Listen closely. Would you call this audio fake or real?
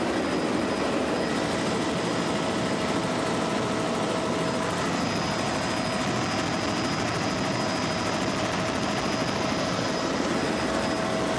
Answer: real